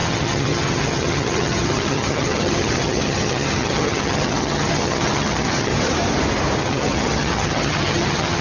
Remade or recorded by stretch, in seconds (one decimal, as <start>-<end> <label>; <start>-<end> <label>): 0.0-5.7 remade; 5.7-6.6 recorded; 6.6-8.4 remade